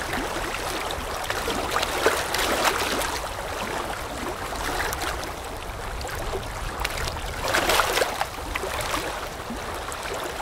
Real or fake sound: real